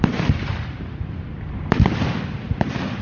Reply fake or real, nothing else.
real